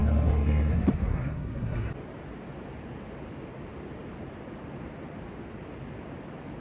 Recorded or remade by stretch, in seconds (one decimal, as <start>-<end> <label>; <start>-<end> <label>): 0.0-1.9 remade; 1.9-6.6 recorded